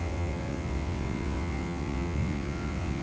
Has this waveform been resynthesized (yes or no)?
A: yes